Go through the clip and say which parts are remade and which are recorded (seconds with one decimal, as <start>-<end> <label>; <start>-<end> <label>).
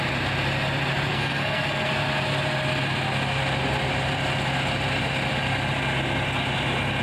0.0-1.1 recorded; 1.1-1.9 remade; 1.9-7.0 recorded